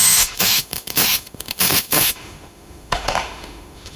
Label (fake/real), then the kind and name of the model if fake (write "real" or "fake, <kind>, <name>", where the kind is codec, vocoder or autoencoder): fake, autoencoder, DAC-VAE